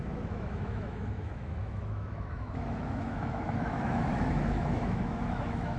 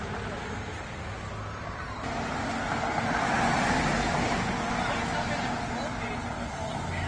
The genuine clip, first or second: second